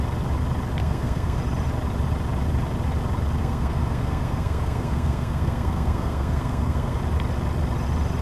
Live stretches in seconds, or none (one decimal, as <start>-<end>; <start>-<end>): 0.0-0.8; 1.4-3.4; 7.0-8.2